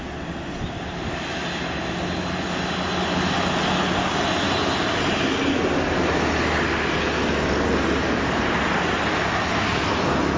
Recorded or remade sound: recorded